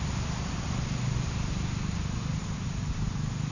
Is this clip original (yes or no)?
yes